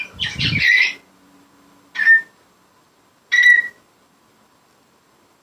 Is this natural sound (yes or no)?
yes